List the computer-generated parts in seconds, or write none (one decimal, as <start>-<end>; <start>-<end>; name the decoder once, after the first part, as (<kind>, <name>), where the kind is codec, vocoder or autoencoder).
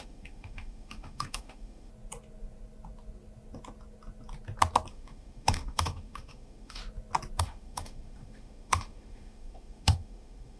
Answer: 0.0-1.9 (autoencoder, DAC-VAE); 4.9-6.8; 7.4-10.6